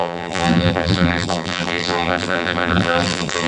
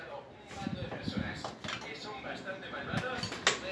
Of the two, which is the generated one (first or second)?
first